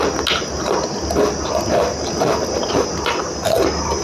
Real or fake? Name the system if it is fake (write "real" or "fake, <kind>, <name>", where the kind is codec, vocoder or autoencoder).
real